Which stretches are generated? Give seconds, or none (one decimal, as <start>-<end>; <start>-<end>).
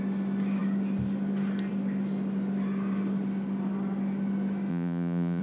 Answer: 4.7-5.4